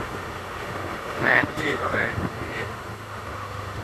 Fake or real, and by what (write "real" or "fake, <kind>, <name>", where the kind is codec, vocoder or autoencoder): fake, autoencoder, DAC-VAE